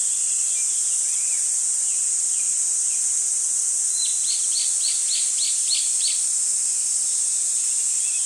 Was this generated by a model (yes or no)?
no